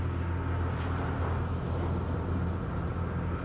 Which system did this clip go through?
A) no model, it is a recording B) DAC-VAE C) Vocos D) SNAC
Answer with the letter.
A